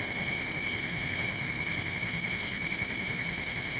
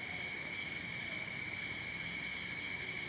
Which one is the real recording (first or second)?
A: second